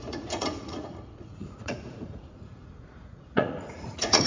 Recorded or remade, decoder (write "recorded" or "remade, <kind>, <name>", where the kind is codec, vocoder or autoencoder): remade, vocoder, Vocos